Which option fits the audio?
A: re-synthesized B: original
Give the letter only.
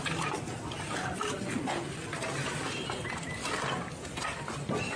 B